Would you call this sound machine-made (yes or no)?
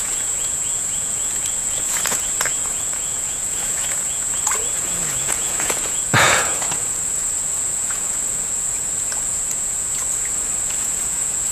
yes